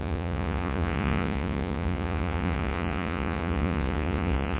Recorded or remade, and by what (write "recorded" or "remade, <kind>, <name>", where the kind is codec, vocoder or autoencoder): remade, vocoder, Vocos